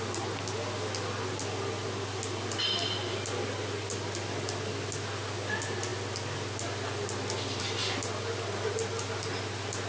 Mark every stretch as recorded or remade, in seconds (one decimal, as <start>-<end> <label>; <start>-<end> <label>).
0.0-9.9 recorded